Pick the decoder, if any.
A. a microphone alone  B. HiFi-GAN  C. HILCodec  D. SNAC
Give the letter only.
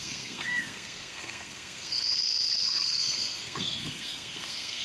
D